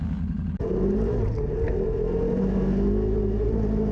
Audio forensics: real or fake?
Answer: real